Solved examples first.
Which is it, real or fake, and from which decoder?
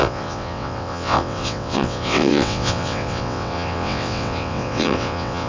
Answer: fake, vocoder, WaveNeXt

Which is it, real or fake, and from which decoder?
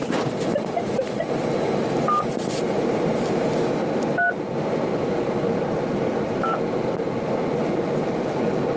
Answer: real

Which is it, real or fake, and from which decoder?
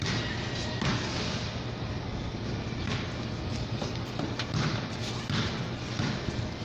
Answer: real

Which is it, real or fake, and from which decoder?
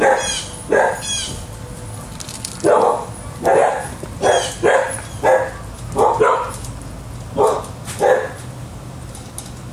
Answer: real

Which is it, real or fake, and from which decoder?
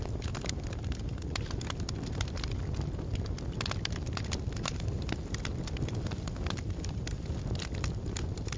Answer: fake, vocoder, BigVGAN v2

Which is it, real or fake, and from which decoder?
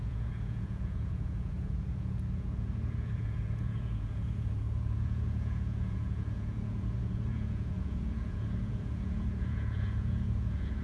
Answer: fake, vocoder, Vocos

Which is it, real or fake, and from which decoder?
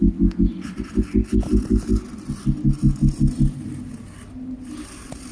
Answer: real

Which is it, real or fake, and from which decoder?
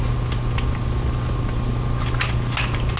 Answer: real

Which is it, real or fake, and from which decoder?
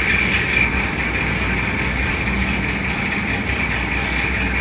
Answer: real